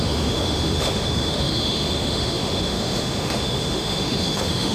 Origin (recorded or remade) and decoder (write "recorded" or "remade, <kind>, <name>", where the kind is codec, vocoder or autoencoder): remade, autoencoder, DAC-VAE